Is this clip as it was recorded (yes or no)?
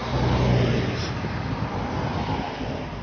yes